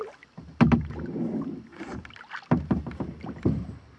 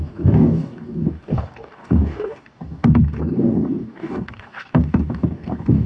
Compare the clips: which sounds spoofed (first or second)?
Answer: second